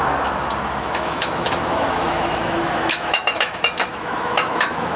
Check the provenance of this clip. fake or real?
fake